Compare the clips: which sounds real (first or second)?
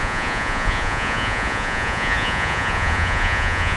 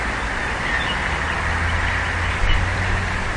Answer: second